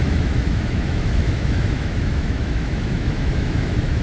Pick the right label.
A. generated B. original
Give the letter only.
A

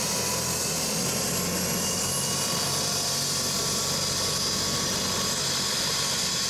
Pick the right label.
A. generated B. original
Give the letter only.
B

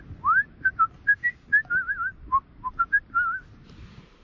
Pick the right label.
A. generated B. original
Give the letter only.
B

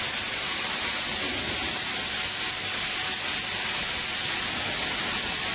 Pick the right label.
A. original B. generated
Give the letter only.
A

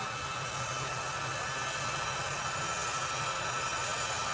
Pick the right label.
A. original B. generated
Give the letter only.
A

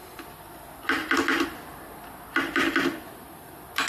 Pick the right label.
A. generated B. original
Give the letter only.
A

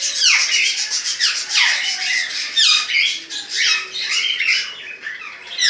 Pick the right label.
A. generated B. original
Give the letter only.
B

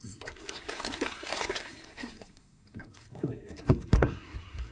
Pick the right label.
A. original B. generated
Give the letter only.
B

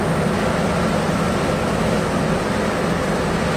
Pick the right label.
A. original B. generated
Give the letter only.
A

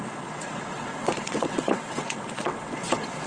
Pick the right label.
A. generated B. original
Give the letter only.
A